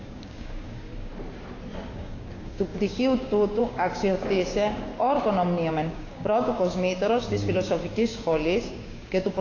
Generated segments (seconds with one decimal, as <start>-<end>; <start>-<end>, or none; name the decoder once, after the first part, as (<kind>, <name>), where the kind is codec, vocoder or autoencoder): 0.0-1.1 (codec, DAC); 1.9-4.9; 5.7-9.4

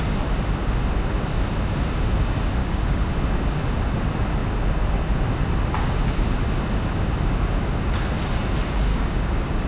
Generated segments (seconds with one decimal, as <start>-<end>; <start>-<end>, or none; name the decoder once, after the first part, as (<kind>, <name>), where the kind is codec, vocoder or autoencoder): 2.6-3.1 (codec, DAC); 8.9-9.7

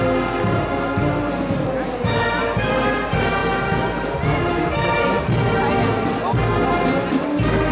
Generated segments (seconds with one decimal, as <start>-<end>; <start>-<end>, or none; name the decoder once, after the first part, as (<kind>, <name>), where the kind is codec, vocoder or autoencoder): none

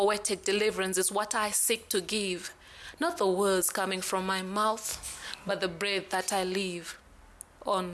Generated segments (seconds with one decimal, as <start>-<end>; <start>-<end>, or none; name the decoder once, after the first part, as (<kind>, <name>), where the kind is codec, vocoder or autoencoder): 4.9-5.5 (codec, DAC)

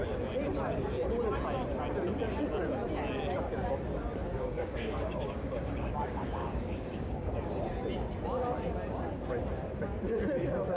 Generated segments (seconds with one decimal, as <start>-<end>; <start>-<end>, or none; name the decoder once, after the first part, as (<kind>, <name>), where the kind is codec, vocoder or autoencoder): 4.2-7.3 (codec, DAC)